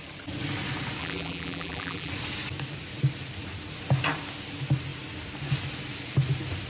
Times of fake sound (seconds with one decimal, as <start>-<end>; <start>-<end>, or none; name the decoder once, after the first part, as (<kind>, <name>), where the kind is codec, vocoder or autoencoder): 1.0-2.1 (vocoder, BigVGAN v2)